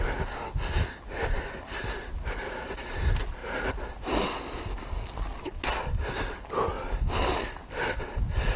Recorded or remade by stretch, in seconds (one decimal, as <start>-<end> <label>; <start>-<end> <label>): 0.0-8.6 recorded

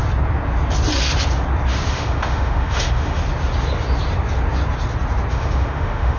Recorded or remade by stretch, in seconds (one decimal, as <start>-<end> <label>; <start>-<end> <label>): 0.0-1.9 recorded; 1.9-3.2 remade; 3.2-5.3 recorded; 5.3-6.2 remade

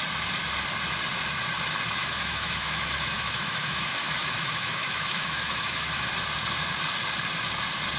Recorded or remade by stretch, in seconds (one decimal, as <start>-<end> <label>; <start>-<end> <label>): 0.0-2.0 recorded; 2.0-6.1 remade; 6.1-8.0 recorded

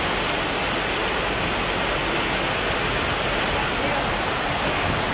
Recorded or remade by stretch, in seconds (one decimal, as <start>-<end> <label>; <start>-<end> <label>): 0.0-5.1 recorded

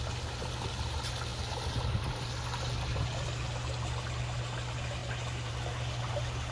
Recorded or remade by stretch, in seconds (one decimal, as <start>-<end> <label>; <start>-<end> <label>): 0.0-6.5 recorded